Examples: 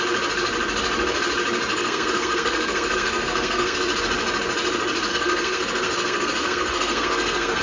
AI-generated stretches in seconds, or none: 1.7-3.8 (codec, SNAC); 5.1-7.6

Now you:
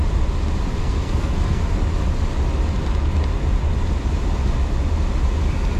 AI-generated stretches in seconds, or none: 0.8-1.6 (codec, SNAC)